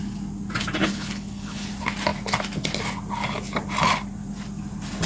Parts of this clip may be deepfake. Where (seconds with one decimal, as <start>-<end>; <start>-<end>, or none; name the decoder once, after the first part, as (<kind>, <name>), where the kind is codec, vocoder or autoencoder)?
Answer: 0.8-1.7 (codec, HILCodec)